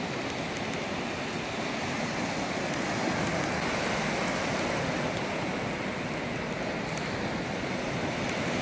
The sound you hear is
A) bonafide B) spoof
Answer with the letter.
A